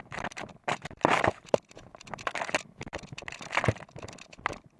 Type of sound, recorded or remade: recorded